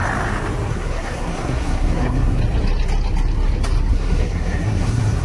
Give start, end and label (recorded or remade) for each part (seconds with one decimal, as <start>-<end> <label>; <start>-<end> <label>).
0.0-0.7 recorded; 0.7-2.4 remade; 2.4-3.9 recorded; 3.9-5.2 remade

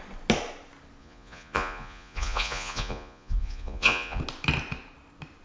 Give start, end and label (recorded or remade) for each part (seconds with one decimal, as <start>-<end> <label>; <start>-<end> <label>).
0.0-1.0 recorded; 1.0-4.2 remade; 4.2-5.4 recorded

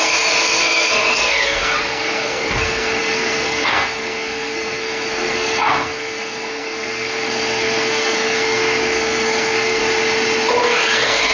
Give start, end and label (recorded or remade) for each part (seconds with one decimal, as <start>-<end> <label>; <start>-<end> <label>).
0.0-9.8 remade; 9.8-10.6 recorded; 10.6-11.3 remade

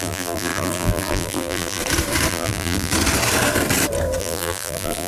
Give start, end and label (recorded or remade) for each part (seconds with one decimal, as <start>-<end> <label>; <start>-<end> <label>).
0.0-1.8 remade; 1.8-2.3 recorded; 2.3-2.9 remade; 2.9-4.2 recorded; 4.2-5.1 remade